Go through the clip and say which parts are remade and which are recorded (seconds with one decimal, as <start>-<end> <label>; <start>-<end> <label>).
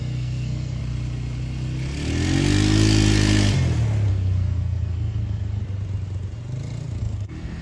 0.0-0.8 remade; 0.8-4.1 recorded; 4.1-5.6 remade; 5.6-7.0 recorded; 7.0-7.6 remade